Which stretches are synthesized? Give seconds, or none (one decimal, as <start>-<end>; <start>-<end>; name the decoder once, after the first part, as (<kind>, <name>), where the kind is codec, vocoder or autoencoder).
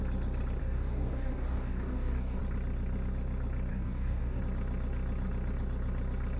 0.6-2.4 (codec, DAC); 3.7-4.4